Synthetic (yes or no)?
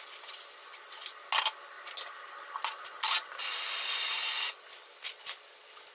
no